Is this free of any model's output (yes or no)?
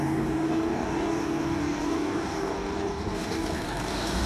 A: no